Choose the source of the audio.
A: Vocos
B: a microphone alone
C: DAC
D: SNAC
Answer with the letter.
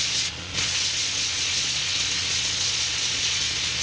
A